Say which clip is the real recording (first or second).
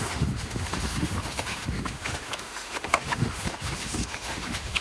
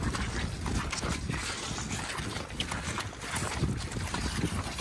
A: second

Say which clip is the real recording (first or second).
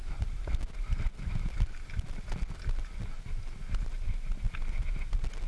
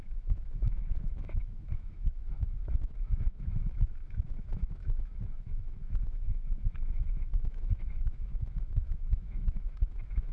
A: first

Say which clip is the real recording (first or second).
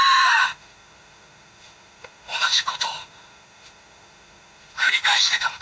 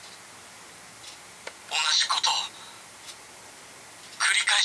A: second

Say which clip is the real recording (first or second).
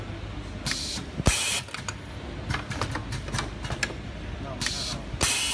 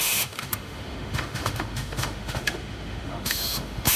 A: first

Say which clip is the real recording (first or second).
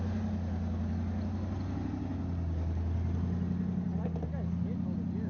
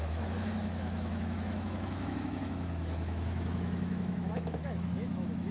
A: first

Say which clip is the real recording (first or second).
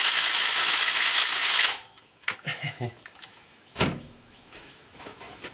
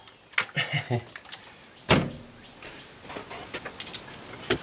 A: second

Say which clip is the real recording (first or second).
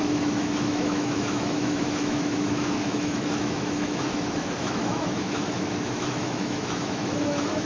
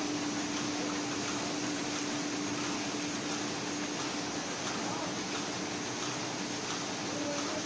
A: second